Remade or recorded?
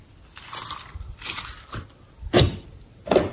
recorded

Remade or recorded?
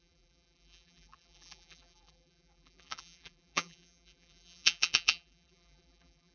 remade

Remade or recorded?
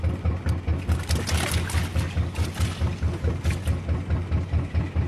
recorded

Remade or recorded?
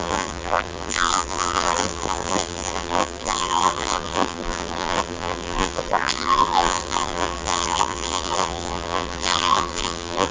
remade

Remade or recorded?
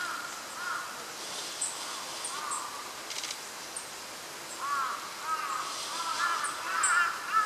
recorded